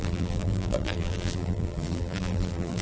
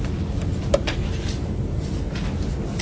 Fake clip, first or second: first